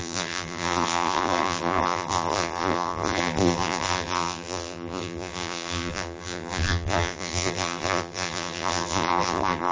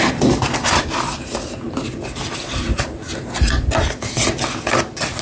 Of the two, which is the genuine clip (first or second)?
second